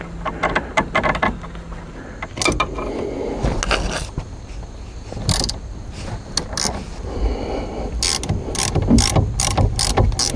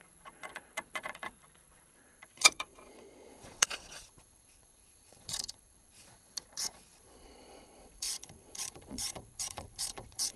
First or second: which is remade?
second